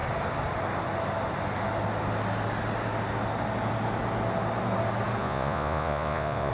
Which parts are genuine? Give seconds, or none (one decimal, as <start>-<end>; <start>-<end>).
0.0-5.2